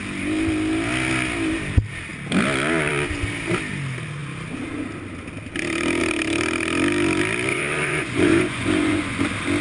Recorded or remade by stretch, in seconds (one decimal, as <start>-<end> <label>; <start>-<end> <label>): 0.0-7.5 recorded; 7.5-9.2 remade; 9.2-9.6 recorded